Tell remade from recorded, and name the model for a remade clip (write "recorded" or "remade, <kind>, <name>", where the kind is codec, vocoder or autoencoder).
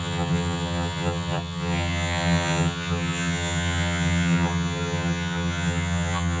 remade, vocoder, HiFi-GAN